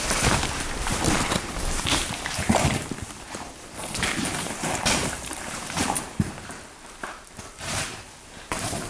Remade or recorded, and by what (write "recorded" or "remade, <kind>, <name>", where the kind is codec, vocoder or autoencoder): remade, vocoder, BigVGAN v2